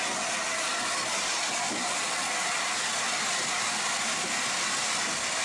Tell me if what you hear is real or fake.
real